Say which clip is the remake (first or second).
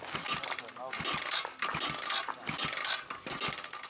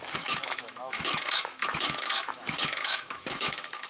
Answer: second